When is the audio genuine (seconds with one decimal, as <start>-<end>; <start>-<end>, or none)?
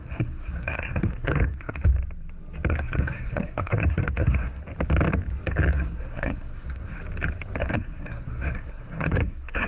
1.9-2.7; 4.6-5.7; 7.0-7.6